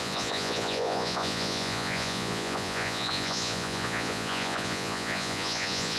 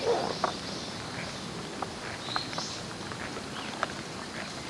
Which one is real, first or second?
second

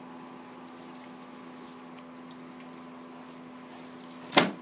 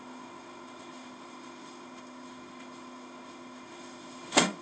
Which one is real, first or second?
first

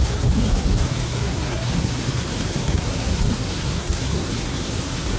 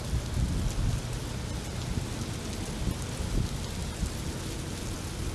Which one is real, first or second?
second